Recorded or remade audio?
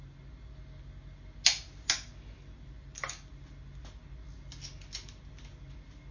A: recorded